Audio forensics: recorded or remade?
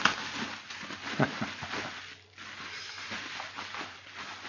recorded